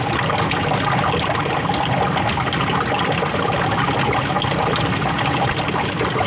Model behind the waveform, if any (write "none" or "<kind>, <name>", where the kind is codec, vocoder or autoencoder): none